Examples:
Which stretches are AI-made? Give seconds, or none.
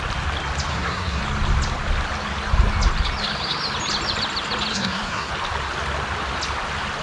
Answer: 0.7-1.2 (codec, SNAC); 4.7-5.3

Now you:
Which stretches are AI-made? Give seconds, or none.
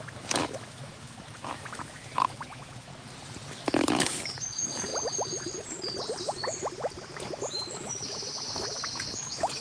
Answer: 0.0-2.9 (autoencoder, DAC-VAE); 3.5-4.9; 7.4-9.6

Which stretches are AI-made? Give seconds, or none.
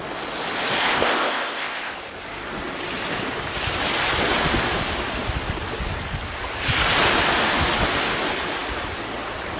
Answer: 0.8-1.9 (codec, ZipCodec)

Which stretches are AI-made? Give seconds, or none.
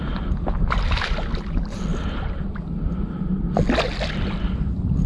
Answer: 1.9-2.5 (vocoder, BigVGAN v2)